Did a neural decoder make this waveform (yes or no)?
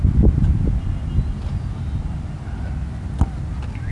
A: no